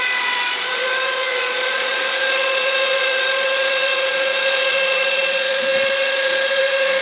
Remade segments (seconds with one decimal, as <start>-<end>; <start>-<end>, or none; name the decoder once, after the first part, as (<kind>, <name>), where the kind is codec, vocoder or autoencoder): 0.0-7.0 (vocoder, Vocos)